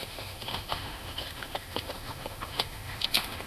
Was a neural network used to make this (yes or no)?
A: yes